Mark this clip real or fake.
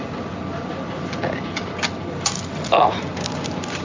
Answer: real